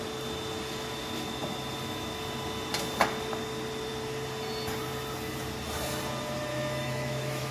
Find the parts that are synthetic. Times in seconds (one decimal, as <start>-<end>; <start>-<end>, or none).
6.5-7.5